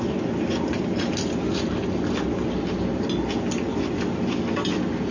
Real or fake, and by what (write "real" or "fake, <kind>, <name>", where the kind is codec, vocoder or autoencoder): real